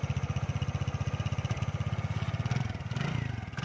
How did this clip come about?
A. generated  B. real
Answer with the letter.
B